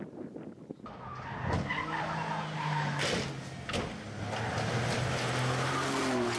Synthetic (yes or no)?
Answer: no